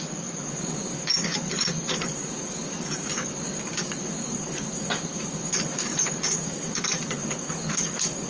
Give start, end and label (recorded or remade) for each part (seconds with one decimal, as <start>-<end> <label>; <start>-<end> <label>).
0.0-8.3 remade